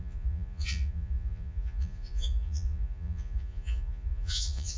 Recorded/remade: remade